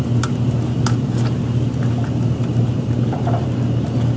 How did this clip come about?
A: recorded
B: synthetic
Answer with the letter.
A